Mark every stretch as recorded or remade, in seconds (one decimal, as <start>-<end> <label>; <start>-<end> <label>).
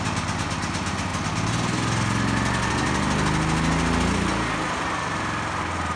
0.0-1.1 remade; 1.1-4.7 recorded; 4.7-6.0 remade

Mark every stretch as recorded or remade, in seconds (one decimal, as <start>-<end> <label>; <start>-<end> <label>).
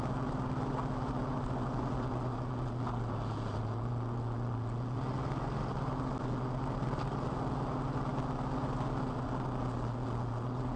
0.0-10.8 recorded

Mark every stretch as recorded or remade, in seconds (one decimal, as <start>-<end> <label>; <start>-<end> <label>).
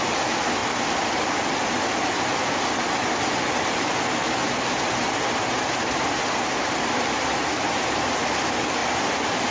0.0-0.6 recorded; 0.6-1.8 remade; 1.8-8.8 recorded; 8.8-9.5 remade